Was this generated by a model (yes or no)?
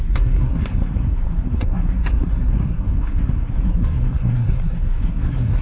yes